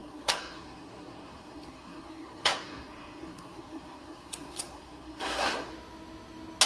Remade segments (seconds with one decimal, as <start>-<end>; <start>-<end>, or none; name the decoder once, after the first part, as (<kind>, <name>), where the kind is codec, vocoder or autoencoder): 0.0-5.7 (codec, SNAC)